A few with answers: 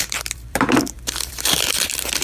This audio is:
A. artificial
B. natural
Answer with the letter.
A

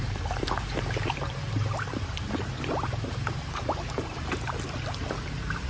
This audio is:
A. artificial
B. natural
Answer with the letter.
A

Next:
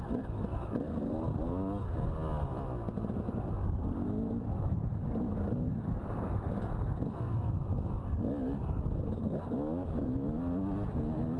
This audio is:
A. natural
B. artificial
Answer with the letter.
A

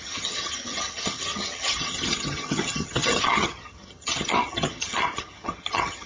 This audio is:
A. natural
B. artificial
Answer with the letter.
B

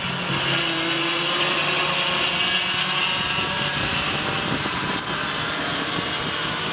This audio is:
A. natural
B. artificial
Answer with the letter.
A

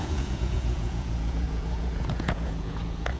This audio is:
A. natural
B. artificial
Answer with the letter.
B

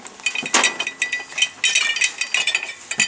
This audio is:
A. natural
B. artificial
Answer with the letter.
A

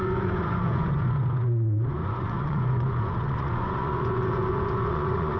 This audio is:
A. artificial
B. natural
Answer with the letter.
A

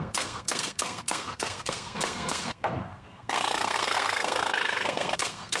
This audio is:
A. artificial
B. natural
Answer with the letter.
A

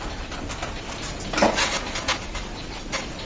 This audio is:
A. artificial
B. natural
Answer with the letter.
B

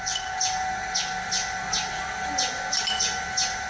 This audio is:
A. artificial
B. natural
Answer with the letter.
B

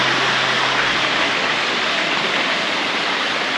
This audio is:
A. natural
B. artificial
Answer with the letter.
A